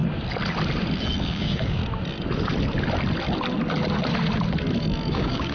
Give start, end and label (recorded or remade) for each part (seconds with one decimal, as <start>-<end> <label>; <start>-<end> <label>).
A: 0.0-1.2 recorded; 1.2-1.8 remade; 1.8-5.1 recorded; 5.1-5.5 remade